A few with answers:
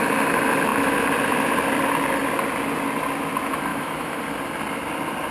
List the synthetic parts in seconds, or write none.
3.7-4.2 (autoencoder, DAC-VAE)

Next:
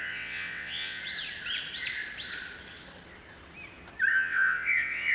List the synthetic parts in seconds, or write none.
0.0-1.0 (vocoder, WaveNeXt); 4.1-5.1

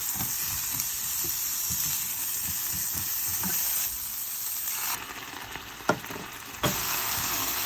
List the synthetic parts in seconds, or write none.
6.8-7.7 (codec, SNAC)